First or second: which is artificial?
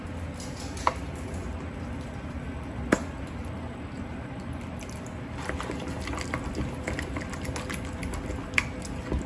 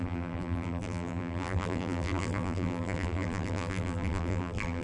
second